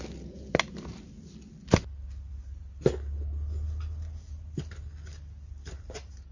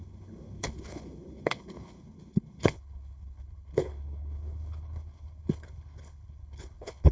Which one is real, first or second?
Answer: first